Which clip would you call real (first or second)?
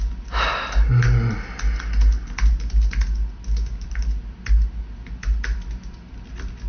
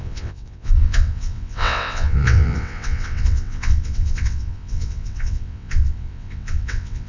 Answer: first